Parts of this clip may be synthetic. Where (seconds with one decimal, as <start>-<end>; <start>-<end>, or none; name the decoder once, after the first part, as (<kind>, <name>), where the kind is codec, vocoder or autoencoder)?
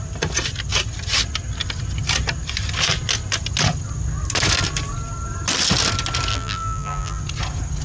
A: 6.3-7.2 (vocoder, BigVGAN v2)